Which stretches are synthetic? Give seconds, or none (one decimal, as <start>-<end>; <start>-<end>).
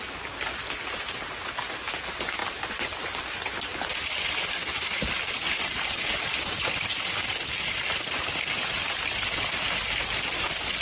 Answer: 2.4-3.2